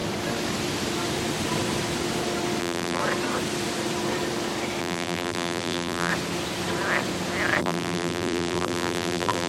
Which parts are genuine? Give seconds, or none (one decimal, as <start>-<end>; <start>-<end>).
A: 0.0-2.6; 3.0-4.8; 6.1-7.6